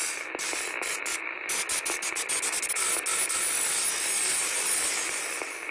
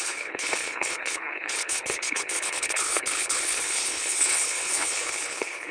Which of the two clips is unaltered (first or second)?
first